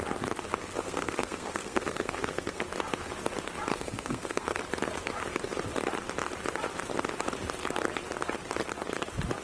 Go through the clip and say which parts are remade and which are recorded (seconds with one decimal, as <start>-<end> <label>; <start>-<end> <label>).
0.0-0.6 recorded; 0.6-2.6 remade; 2.6-3.7 recorded; 3.7-4.6 remade; 4.6-9.4 recorded